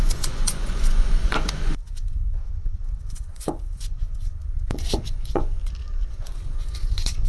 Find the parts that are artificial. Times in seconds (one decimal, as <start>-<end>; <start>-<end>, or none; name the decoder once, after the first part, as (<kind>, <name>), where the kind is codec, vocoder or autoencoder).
0.0-5.6 (vocoder, Vocos); 6.1-7.3